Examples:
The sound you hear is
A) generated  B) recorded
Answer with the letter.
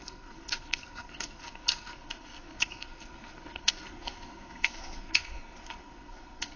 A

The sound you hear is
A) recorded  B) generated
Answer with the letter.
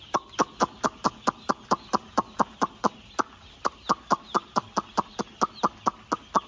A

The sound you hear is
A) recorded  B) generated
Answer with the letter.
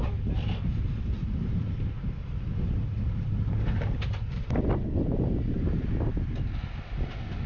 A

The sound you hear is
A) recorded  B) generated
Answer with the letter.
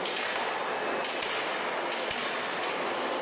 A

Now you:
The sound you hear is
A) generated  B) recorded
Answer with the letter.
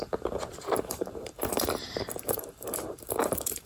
A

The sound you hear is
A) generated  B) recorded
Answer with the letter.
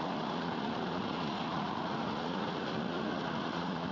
A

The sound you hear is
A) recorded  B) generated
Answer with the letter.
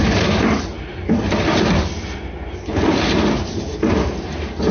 A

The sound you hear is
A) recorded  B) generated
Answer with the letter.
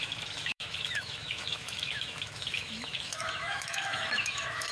B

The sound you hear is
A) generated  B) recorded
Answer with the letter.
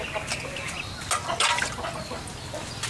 B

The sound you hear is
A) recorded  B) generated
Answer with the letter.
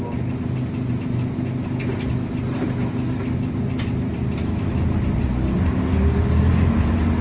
A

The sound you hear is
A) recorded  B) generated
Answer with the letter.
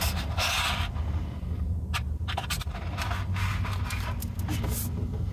A